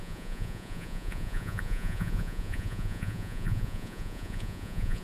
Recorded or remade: remade